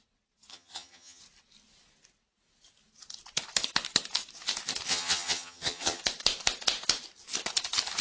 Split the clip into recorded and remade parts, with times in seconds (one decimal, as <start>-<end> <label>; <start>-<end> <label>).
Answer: 0.0-0.5 recorded; 0.5-1.2 remade; 1.2-4.9 recorded; 4.9-6.0 remade; 6.0-8.0 recorded